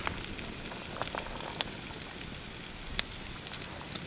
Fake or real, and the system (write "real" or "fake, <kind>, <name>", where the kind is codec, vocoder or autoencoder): real